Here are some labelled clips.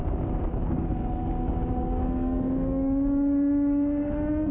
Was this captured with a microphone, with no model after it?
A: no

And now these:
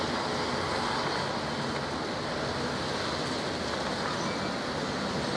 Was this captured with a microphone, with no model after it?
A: yes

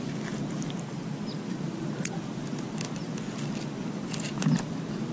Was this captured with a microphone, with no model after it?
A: yes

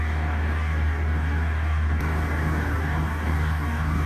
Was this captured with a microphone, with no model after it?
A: no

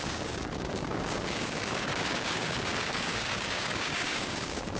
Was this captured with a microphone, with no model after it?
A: no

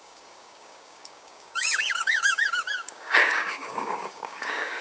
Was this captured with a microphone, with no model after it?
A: no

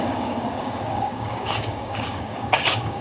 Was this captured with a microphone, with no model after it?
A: no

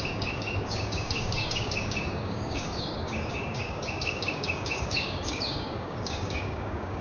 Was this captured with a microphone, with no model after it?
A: no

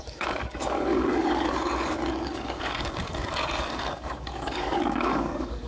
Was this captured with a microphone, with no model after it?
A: no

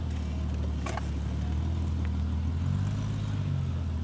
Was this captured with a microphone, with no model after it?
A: yes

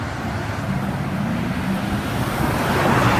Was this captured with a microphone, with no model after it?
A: yes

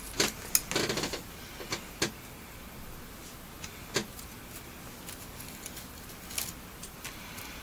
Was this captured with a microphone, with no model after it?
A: yes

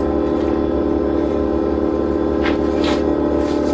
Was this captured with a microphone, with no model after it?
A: yes